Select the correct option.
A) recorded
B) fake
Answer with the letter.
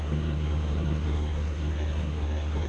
B